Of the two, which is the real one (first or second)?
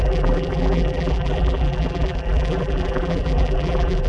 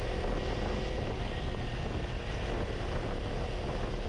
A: second